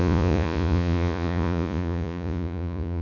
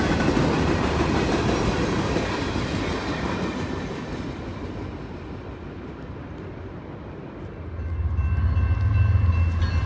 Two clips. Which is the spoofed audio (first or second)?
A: first